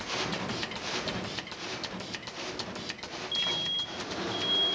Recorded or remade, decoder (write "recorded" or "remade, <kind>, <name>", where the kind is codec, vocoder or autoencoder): recorded